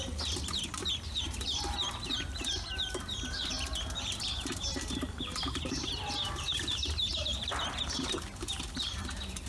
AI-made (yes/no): yes